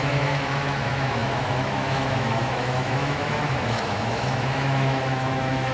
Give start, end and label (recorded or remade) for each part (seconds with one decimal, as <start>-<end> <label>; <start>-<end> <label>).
0.0-5.7 remade